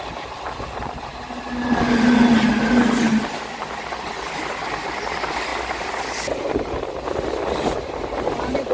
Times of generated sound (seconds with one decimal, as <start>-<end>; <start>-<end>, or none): none